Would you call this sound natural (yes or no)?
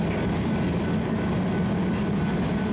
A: yes